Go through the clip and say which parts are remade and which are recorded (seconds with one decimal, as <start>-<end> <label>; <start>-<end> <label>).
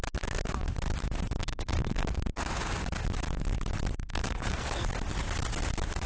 0.0-1.4 recorded; 1.4-2.1 remade; 2.1-4.0 recorded; 4.0-4.9 remade; 4.9-6.1 recorded